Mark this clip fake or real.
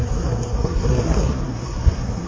fake